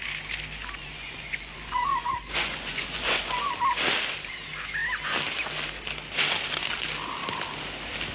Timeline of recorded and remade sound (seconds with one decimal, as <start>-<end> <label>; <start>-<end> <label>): 0.0-0.8 recorded; 0.8-3.5 remade; 3.5-8.1 recorded